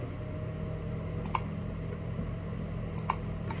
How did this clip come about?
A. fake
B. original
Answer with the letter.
B